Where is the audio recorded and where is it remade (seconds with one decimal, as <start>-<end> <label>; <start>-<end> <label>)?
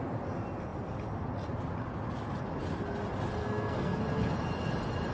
0.0-3.4 recorded; 3.4-4.0 remade; 4.0-5.1 recorded